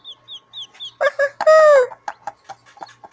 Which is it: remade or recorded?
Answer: recorded